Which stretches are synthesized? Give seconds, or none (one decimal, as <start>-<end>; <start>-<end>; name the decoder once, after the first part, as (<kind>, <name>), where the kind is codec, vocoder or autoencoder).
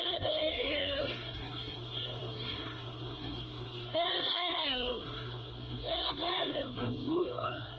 0.0-7.8 (codec, SNAC)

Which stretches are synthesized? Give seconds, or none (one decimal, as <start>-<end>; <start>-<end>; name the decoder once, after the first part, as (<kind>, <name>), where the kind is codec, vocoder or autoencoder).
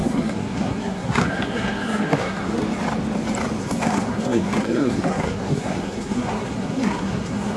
0.0-2.6 (codec, SNAC); 3.6-7.6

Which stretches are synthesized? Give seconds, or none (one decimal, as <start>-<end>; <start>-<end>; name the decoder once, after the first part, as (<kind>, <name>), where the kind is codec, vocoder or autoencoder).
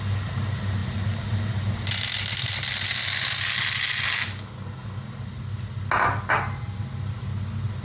none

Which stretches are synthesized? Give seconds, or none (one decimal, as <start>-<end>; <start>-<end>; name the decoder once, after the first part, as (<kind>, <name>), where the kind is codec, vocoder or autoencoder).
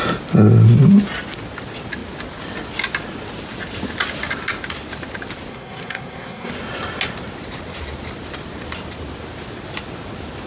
5.5-6.5 (codec, SNAC)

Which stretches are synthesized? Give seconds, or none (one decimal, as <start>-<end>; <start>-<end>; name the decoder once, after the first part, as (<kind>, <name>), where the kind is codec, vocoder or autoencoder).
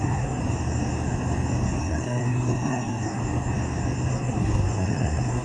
0.0-0.4 (codec, SNAC); 1.8-3.2; 4.1-5.4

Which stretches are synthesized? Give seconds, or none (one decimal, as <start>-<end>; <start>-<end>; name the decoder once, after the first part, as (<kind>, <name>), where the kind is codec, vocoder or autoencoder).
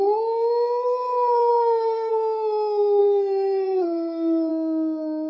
1.5-2.1 (codec, SNAC); 3.0-4.5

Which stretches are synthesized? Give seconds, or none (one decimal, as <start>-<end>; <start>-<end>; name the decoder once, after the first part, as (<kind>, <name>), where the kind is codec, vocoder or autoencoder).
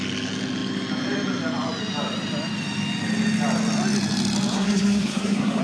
4.5-5.6 (codec, SNAC)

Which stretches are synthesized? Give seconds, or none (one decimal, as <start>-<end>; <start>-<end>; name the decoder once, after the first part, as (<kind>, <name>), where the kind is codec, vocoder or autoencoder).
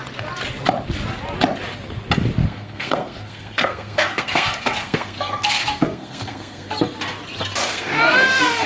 2.4-6.8 (codec, SNAC); 7.6-8.7